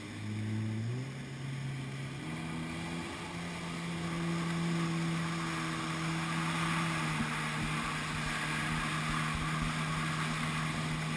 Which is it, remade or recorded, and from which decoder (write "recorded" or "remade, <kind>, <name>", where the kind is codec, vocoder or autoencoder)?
recorded